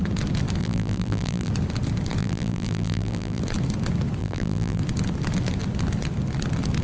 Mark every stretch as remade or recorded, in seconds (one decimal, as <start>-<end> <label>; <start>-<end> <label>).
0.0-0.6 recorded; 0.6-1.5 remade; 1.5-2.2 recorded; 2.2-3.4 remade; 3.4-4.2 recorded; 4.2-4.8 remade; 4.8-6.8 recorded